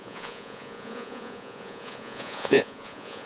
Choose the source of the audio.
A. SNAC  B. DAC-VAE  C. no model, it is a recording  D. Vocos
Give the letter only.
D